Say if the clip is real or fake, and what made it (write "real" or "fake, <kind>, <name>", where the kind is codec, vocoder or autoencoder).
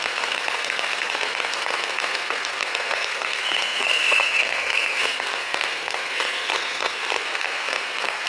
fake, codec, SNAC